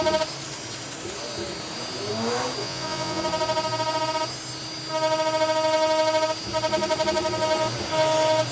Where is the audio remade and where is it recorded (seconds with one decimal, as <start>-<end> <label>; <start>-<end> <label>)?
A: 0.0-2.6 recorded; 2.6-3.2 remade; 3.2-8.5 recorded